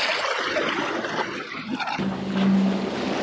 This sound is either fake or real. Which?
real